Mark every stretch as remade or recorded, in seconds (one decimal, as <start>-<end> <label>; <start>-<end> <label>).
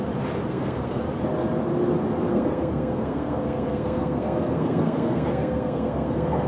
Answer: 0.0-0.5 recorded; 0.5-1.0 remade; 1.0-2.3 recorded; 2.3-6.5 remade